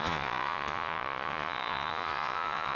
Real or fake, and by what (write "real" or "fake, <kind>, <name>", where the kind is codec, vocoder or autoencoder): fake, vocoder, Vocos